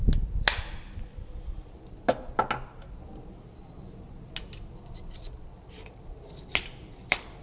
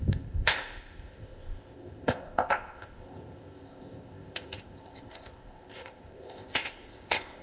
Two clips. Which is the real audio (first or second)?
first